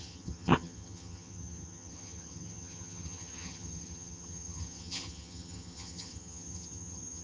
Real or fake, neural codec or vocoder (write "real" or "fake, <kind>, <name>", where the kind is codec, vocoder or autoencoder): fake, vocoder, HiFi-GAN